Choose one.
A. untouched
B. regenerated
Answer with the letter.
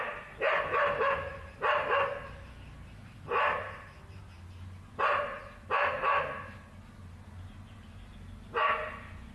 A